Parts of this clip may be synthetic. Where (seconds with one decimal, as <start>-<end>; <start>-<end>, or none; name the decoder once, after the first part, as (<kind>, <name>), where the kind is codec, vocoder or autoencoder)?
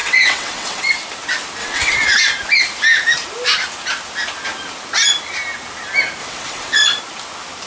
0.0-0.8 (vocoder, WaveNeXt); 1.6-2.2; 6.2-7.0